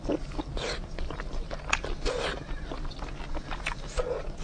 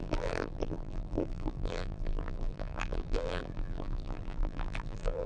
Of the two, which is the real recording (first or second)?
first